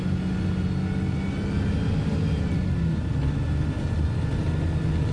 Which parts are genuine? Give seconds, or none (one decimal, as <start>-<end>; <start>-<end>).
0.0-5.1